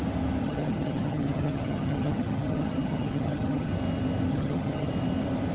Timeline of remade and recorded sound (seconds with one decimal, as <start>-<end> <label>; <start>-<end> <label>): 0.0-0.4 recorded; 0.4-3.7 remade; 3.7-4.3 recorded; 4.3-4.9 remade; 4.9-5.5 recorded